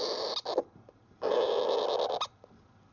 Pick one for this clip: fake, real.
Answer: real